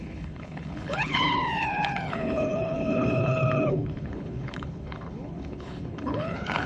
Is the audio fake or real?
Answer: fake